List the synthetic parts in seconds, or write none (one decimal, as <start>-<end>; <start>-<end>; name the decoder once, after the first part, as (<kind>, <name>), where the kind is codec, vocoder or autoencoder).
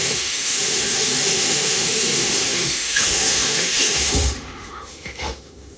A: 0.0-5.8 (autoencoder, DAC-VAE)